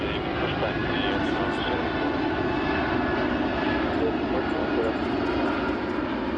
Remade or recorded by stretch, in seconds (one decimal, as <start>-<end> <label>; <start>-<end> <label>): 0.0-6.4 recorded